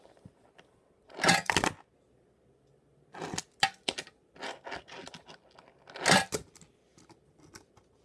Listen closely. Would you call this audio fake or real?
real